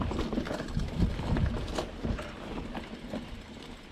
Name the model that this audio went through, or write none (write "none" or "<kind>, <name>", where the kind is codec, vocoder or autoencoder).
none